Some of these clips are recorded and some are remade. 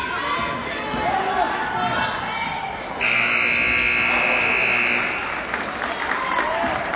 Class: recorded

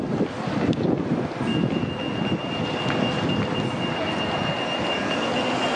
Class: recorded